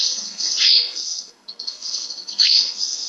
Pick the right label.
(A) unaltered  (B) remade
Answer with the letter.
B